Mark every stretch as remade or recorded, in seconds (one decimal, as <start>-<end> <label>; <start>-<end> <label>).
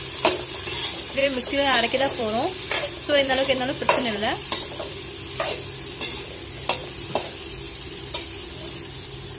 0.0-1.2 recorded; 1.2-5.0 remade; 5.0-6.8 recorded; 6.8-8.9 remade; 8.9-9.4 recorded